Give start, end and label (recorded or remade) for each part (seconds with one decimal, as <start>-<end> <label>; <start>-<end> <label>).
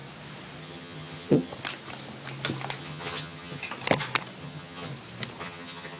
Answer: 0.0-0.6 recorded; 0.6-1.5 remade; 1.5-2.8 recorded; 2.8-3.6 remade; 3.6-4.4 recorded; 4.4-4.9 remade; 4.9-5.4 recorded; 5.4-6.0 remade